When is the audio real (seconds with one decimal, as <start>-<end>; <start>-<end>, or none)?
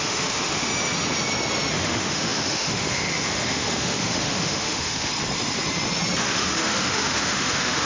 0.7-1.7; 5.1-6.2